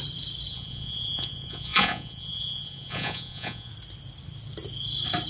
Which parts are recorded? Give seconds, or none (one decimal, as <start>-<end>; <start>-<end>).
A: 0.0-0.5; 3.7-5.3